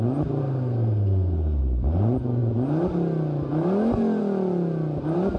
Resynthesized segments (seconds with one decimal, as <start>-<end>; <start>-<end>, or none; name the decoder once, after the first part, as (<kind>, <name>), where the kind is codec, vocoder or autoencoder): 0.4-1.6 (codec, SNAC)